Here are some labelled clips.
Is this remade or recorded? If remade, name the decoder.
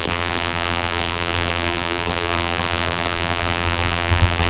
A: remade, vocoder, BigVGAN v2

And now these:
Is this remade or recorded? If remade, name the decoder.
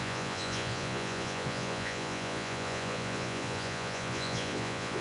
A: remade, vocoder, Vocos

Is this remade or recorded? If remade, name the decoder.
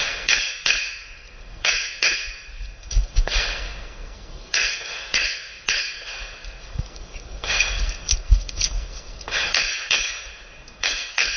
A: remade, codec, SNAC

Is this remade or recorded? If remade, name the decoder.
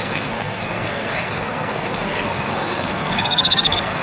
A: remade, codec, SNAC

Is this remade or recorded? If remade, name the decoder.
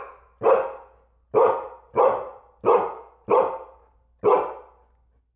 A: recorded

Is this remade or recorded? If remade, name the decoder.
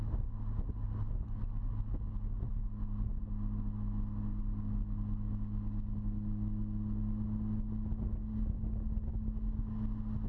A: recorded